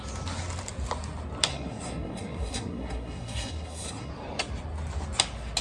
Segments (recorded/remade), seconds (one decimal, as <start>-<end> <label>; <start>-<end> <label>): 0.0-1.5 recorded; 1.5-4.1 remade; 4.1-5.6 recorded